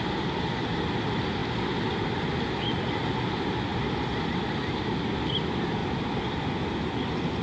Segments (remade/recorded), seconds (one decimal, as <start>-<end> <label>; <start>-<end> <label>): 0.0-7.4 recorded

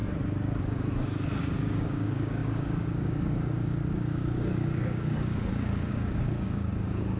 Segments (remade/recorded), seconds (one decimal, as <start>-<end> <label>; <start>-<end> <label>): 0.0-1.4 recorded; 1.4-7.2 remade

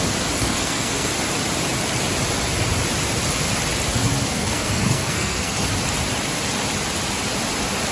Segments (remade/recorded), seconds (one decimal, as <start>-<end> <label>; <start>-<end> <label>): 0.0-0.4 recorded; 0.4-1.1 remade; 1.1-4.0 recorded; 4.0-5.7 remade; 5.7-7.9 recorded

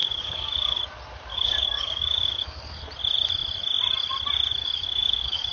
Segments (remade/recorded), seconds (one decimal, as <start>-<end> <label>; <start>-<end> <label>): 0.0-0.8 remade; 0.8-1.3 recorded; 1.3-2.6 remade; 2.6-4.6 recorded; 4.6-5.5 remade

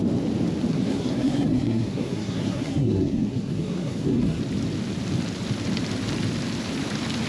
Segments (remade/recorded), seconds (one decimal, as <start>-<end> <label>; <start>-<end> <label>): 0.0-0.7 recorded; 0.7-4.4 remade; 4.4-7.3 recorded

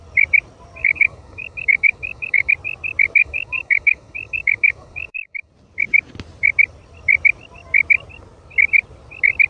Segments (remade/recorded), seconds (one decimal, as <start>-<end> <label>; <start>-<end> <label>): 0.0-0.8 recorded; 0.8-2.5 remade; 2.5-3.2 recorded; 3.2-5.5 remade; 5.5-9.5 recorded